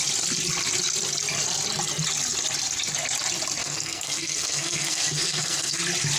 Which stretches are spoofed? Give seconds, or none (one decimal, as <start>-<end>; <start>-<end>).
3.6-5.8